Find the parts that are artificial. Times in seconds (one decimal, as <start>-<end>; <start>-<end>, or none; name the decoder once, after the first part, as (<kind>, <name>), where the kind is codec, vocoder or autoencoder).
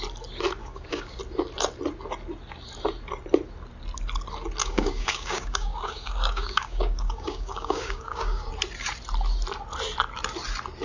0.6-1.2 (codec, DAC); 4.6-8.5